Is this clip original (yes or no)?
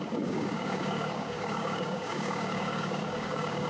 no